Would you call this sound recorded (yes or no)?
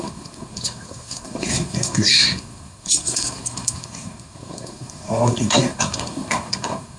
no